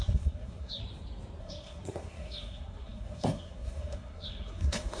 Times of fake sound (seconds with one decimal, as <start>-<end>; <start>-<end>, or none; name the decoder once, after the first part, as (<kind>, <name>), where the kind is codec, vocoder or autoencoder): 0.0-0.8 (codec, SNAC); 1.4-5.0